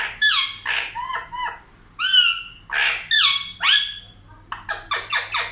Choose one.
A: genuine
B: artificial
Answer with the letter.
A